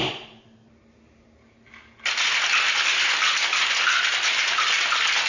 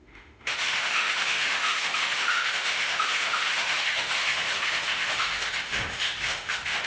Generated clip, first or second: second